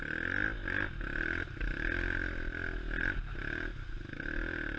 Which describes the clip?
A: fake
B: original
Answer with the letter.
B